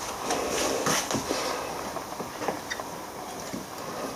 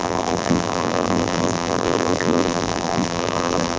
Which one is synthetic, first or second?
second